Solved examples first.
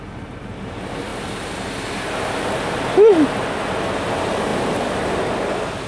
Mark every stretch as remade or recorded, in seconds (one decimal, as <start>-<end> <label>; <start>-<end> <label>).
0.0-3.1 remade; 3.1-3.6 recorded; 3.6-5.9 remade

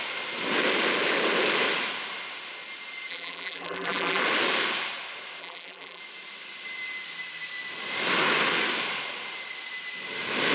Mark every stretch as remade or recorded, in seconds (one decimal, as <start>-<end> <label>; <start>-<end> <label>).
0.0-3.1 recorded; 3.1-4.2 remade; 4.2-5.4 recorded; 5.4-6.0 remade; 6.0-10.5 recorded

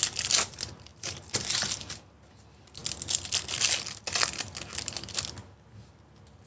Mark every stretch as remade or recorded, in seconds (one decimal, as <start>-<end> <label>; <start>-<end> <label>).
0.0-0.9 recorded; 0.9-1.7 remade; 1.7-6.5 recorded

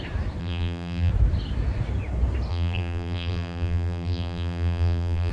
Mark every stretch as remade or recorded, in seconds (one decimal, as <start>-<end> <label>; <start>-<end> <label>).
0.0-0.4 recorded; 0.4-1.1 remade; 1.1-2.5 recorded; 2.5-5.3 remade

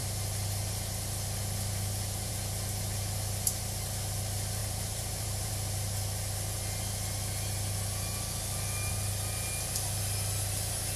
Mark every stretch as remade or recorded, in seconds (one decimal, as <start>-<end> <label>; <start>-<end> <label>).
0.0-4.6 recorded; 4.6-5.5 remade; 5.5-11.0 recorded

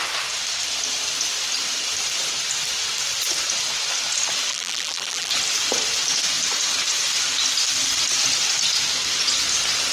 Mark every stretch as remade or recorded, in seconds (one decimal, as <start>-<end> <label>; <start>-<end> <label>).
0.0-4.5 recorded; 4.5-5.3 remade; 5.3-9.9 recorded

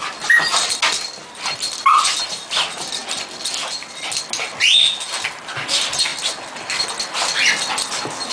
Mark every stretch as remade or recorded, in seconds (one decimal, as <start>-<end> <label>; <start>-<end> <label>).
0.0-0.5 remade; 0.5-1.2 recorded; 1.2-3.0 remade; 3.0-5.5 recorded; 5.5-6.1 remade; 6.1-7.7 recorded; 7.7-8.3 remade